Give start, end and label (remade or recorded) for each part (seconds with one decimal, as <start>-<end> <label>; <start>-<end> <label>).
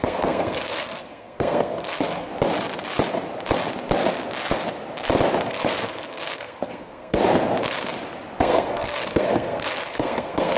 0.0-2.3 remade; 2.3-5.5 recorded; 5.5-7.2 remade; 7.2-8.4 recorded; 8.4-10.6 remade